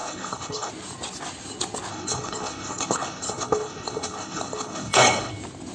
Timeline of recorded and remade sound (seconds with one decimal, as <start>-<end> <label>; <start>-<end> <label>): 0.0-0.7 remade; 0.7-1.9 recorded; 1.9-5.3 remade; 5.3-5.7 recorded